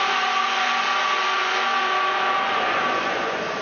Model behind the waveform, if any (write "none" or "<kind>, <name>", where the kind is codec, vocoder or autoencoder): vocoder, Vocos